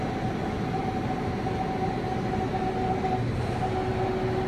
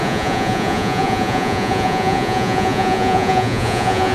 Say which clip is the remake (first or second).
second